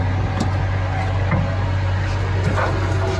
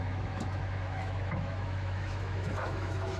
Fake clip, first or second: second